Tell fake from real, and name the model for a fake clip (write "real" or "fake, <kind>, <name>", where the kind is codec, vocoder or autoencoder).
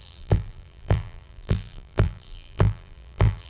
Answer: fake, vocoder, BigVGAN v2